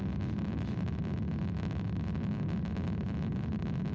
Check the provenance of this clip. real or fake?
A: real